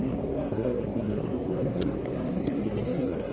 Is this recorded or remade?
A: remade